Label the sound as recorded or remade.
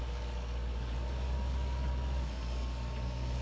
remade